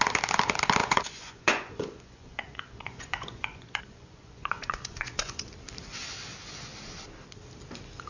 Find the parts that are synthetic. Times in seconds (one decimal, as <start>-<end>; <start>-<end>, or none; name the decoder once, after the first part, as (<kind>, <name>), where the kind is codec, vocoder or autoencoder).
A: 0.8-5.5 (vocoder, Vocos)